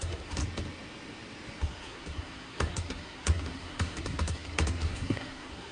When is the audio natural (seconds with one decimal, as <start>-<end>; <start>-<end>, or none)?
0.4-1.6